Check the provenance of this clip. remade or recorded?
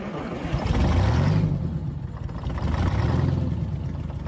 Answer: recorded